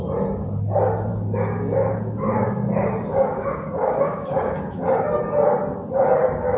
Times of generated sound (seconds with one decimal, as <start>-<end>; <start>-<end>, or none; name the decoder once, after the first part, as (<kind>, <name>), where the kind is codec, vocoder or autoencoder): 1.1-5.1 (codec, DAC)